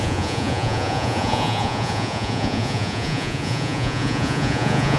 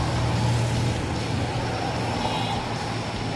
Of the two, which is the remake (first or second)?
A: first